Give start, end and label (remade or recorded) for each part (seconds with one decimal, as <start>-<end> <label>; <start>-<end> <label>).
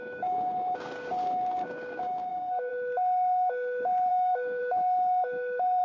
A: 0.0-2.7 remade; 2.7-4.1 recorded; 4.1-4.6 remade; 4.6-5.8 recorded